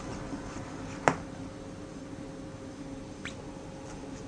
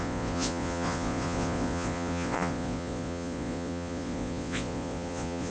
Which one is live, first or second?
first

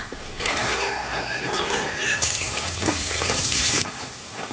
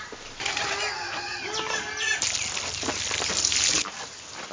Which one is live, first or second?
second